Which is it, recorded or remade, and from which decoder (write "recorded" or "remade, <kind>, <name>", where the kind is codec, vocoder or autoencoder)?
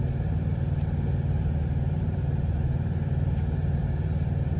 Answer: remade, vocoder, BigVGAN v2